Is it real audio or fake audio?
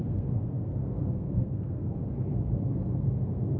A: fake